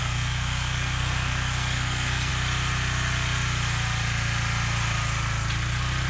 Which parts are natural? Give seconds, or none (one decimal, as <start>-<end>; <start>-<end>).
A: 2.3-6.1